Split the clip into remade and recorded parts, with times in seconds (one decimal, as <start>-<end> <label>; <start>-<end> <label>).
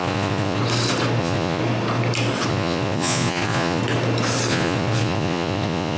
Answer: 0.0-0.6 remade; 0.6-1.2 recorded; 1.2-1.6 remade; 1.6-2.5 recorded; 2.5-3.8 remade; 3.8-4.5 recorded; 4.5-6.0 remade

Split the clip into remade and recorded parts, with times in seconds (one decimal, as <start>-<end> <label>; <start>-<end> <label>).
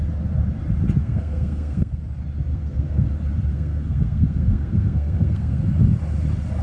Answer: 0.0-1.0 recorded; 1.0-2.0 remade; 2.0-2.5 recorded; 2.5-3.1 remade; 3.1-3.5 recorded; 3.5-5.6 remade; 5.6-6.6 recorded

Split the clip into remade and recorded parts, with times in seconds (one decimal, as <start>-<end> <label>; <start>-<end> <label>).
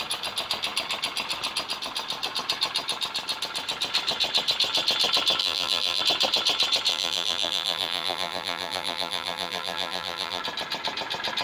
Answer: 0.0-5.4 recorded; 5.4-6.0 remade; 6.0-6.9 recorded; 6.9-10.4 remade; 10.4-11.4 recorded